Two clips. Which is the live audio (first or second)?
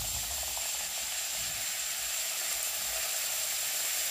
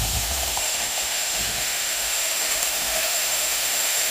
first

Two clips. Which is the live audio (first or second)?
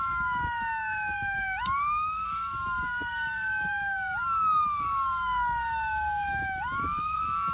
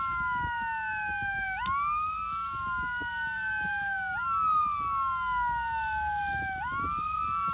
second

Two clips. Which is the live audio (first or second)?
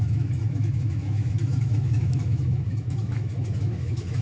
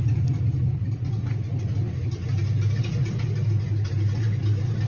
second